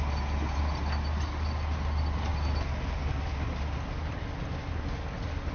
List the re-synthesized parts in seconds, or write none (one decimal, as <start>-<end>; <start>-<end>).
none